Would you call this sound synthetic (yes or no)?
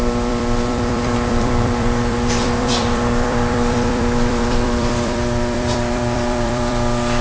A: yes